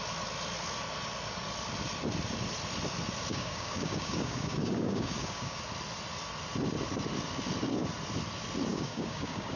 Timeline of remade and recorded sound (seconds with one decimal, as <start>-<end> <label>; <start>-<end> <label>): 0.0-3.3 recorded; 3.3-5.6 remade; 5.6-8.7 recorded; 8.7-9.6 remade